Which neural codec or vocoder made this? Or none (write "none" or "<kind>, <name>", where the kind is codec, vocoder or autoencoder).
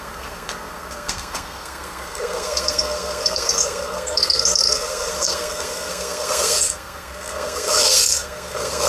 codec, SNAC